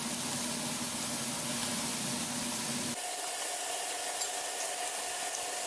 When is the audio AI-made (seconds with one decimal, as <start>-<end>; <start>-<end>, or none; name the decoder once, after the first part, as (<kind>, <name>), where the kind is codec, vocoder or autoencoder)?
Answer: none